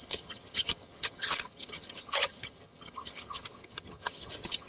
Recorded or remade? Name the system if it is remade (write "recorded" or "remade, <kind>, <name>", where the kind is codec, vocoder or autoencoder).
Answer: remade, vocoder, HiFi-GAN